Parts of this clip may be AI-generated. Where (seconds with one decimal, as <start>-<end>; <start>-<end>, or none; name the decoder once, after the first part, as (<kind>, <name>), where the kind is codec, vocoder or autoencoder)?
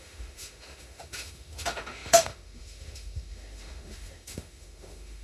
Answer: 0.0-5.2 (autoencoder, DAC-VAE)